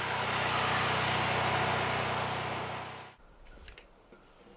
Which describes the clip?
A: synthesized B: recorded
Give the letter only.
B